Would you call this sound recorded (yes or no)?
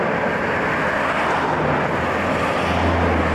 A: yes